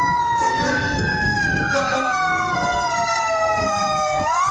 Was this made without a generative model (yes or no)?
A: no